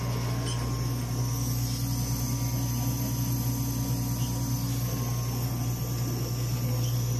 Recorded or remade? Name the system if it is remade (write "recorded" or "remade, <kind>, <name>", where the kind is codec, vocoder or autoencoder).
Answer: recorded